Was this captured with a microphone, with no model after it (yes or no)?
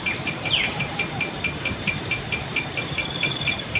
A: no